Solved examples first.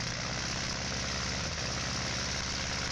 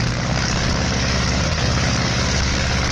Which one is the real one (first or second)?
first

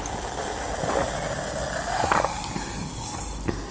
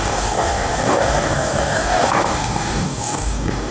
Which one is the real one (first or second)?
first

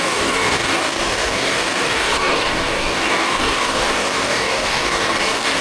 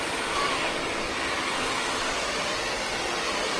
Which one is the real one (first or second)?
second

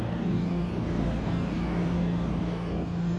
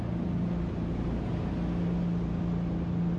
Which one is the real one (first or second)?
second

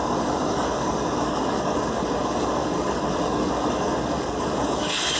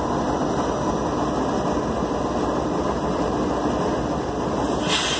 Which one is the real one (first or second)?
second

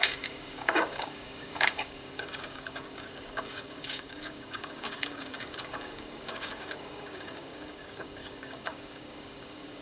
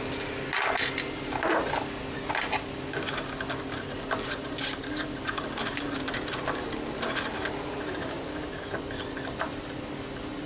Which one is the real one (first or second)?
second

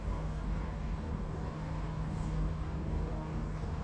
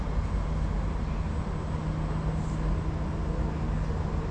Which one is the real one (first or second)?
second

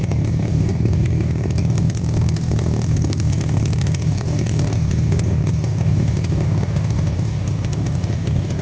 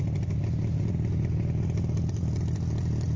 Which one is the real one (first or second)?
second